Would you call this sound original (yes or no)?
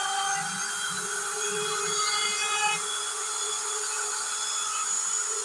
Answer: no